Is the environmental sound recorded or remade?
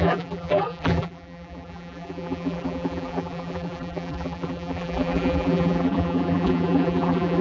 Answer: remade